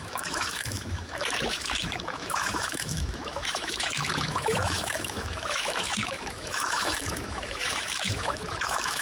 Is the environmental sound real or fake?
fake